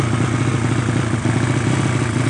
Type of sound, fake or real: real